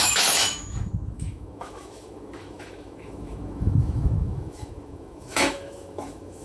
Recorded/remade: remade